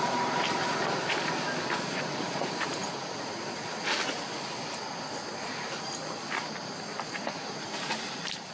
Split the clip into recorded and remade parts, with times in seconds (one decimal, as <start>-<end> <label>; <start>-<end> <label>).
0.0-0.6 remade; 0.6-2.3 recorded; 2.3-2.8 remade; 2.8-7.3 recorded; 7.3-8.5 remade